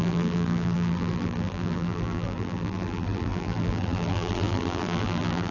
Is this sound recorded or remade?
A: remade